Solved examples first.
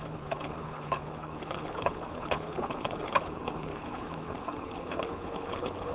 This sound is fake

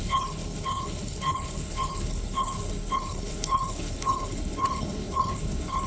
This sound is fake